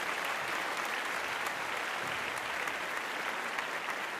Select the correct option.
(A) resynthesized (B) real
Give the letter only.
B